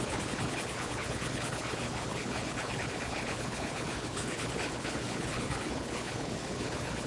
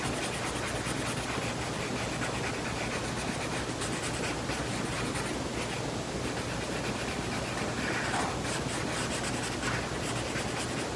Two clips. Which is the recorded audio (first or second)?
second